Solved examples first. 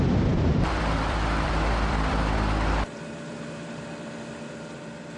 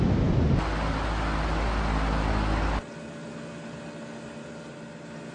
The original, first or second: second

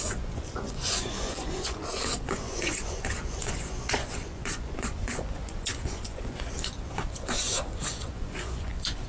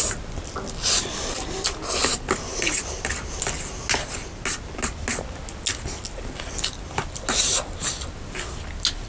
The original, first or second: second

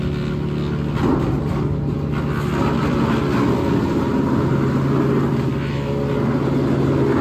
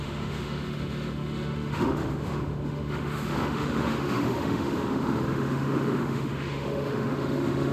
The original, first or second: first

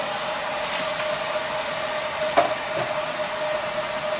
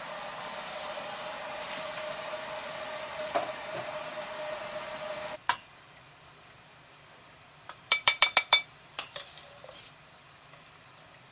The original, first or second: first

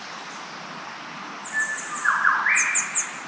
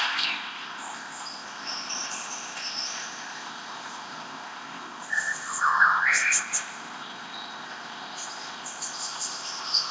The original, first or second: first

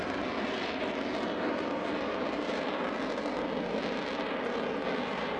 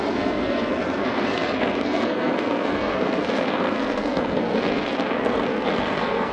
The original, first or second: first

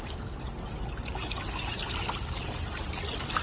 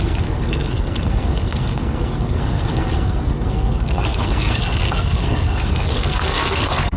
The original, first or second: first